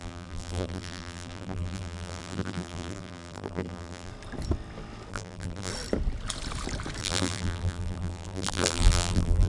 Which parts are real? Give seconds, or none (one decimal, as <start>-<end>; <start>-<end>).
4.1-5.1; 5.7-7.0